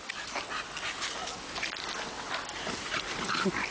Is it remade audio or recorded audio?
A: recorded